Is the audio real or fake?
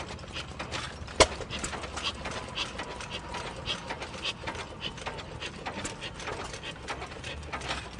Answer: real